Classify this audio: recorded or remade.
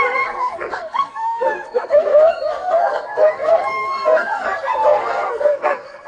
remade